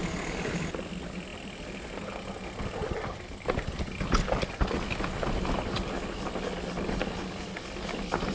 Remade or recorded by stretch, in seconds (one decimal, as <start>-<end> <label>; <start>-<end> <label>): 0.0-8.3 recorded